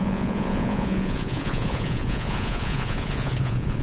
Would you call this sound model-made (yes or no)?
yes